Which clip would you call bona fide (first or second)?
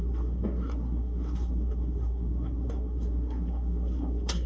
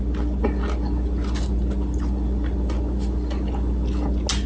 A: second